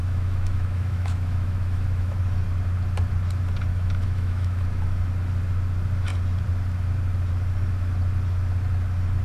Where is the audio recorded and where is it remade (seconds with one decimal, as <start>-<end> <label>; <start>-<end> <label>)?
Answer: 0.0-2.2 remade; 2.2-3.7 recorded; 3.7-5.0 remade; 5.0-9.2 recorded